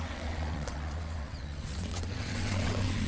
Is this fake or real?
fake